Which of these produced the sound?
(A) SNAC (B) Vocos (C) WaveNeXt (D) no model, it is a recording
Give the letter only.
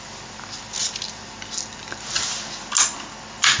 D